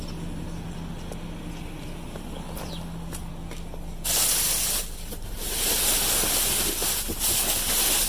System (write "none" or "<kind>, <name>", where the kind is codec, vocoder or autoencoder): none